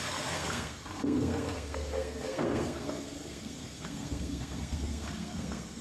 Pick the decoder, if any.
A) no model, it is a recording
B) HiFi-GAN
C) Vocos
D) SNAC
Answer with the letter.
D